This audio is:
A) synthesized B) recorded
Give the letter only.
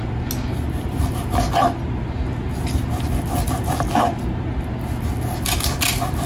B